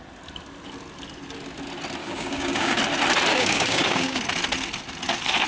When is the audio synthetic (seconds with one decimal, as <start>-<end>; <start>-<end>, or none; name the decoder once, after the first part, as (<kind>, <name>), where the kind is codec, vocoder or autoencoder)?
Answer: 2.0-2.8 (codec, DAC); 3.3-4.2